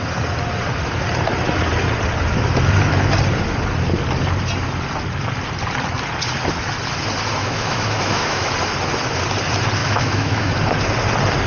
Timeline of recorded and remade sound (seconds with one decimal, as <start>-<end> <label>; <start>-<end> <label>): 0.0-7.4 recorded; 7.4-8.5 remade; 8.5-9.8 recorded; 9.8-10.5 remade; 10.5-11.5 recorded